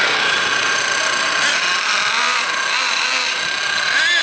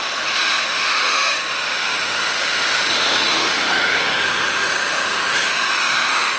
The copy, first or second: second